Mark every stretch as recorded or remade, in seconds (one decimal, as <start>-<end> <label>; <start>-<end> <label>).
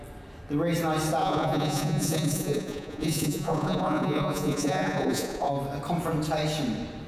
0.0-1.2 recorded; 1.2-5.5 remade; 5.5-7.1 recorded